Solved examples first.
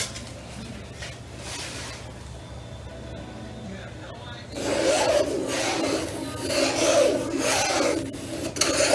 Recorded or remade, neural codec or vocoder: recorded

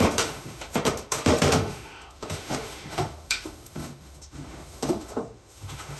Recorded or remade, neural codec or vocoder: remade, autoencoder, DAC-VAE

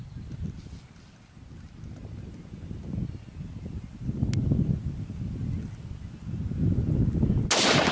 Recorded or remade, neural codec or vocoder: recorded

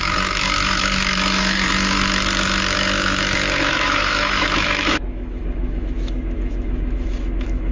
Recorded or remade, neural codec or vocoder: remade, autoencoder, DAC-VAE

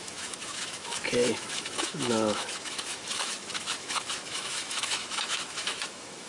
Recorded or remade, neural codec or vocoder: remade, autoencoder, DAC-VAE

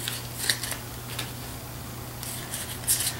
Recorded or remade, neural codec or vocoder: recorded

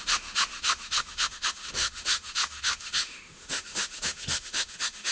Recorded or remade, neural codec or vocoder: remade, autoencoder, DAC-VAE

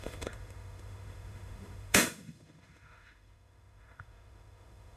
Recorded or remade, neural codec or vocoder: remade, autoencoder, DAC-VAE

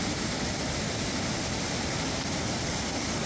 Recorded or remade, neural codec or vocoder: recorded